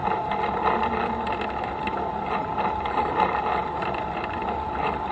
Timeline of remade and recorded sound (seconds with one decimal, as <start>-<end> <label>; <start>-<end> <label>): 0.0-5.1 recorded